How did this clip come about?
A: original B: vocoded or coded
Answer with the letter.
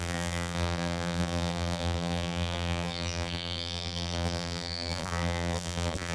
B